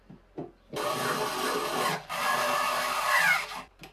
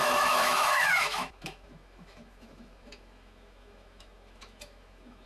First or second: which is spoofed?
second